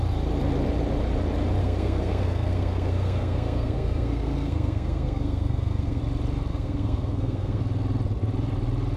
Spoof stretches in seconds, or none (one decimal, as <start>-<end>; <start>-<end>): 1.6-6.0; 6.5-7.6